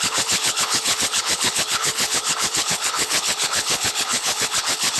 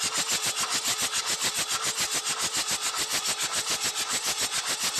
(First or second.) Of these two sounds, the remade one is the first